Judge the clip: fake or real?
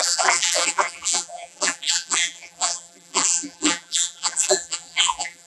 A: fake